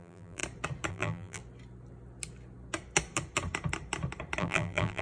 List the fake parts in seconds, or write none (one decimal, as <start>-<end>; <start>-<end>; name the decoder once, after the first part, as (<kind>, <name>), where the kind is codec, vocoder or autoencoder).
0.0-0.4 (vocoder, BigVGAN v2); 0.9-1.4; 4.4-5.0